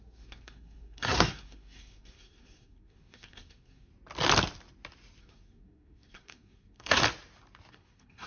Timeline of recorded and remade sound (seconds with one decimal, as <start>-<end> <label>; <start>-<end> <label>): 0.0-3.9 remade; 3.9-5.2 recorded; 5.2-7.0 remade; 7.0-7.7 recorded; 7.7-8.3 remade

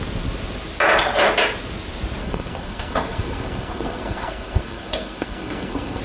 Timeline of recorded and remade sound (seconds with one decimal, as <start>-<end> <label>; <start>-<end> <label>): 0.0-2.2 recorded; 2.2-6.0 remade

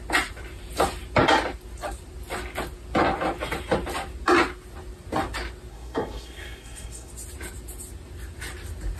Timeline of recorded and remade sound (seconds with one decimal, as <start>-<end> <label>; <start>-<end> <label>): 0.0-5.7 recorded; 5.7-7.1 remade; 7.1-9.0 recorded

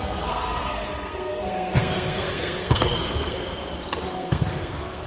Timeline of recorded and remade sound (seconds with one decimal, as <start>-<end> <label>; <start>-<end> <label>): 0.0-3.6 remade; 3.6-4.1 recorded; 4.1-5.1 remade

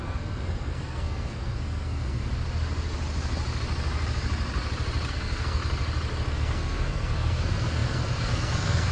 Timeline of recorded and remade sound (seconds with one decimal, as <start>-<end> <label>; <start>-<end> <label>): 0.0-2.2 remade; 2.2-5.1 recorded; 5.1-5.6 remade; 5.6-6.3 recorded; 6.3-8.9 remade

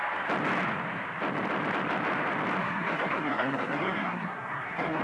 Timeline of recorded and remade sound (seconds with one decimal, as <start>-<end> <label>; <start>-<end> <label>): 0.0-2.6 recorded; 2.6-5.0 remade

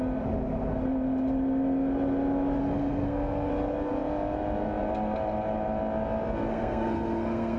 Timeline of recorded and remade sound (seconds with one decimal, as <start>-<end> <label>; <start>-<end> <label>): 0.0-2.6 recorded; 2.6-3.5 remade; 3.5-6.5 recorded; 6.5-7.6 remade